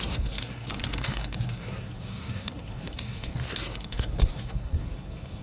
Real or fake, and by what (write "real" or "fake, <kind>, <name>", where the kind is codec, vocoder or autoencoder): fake, codec, SNAC